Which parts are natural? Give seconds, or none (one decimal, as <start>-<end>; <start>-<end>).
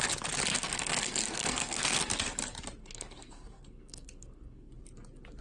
0.0-0.5; 2.1-2.8; 4.7-5.4